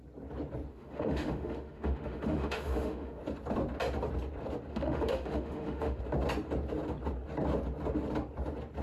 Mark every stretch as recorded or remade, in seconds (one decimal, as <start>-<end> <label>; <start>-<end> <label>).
0.0-0.7 recorded; 0.7-3.2 remade; 3.2-4.7 recorded; 4.7-6.0 remade; 6.0-8.8 recorded